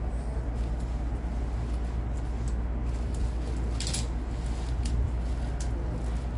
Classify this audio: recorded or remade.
recorded